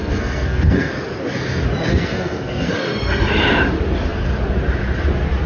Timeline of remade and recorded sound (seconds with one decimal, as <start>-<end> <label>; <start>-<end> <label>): 0.0-0.9 remade; 0.9-1.9 recorded; 1.9-2.7 remade; 2.7-5.5 recorded